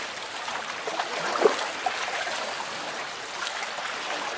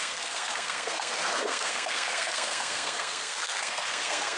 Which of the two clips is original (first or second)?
first